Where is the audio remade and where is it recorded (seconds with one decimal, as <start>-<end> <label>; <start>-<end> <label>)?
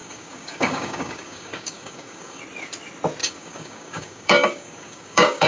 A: 0.0-2.4 remade; 2.4-3.2 recorded; 3.2-5.5 remade